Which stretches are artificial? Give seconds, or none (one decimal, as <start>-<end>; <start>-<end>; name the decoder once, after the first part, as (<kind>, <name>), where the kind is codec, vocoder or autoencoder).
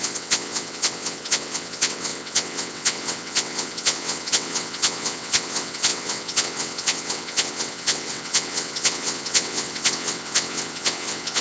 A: 0.0-11.4 (vocoder, WaveNeXt)